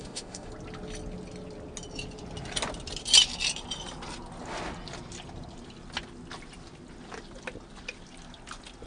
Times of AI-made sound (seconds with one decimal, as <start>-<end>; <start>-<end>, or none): 0.0-0.5